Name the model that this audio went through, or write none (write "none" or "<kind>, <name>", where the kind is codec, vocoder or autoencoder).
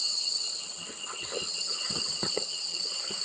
vocoder, HiFi-GAN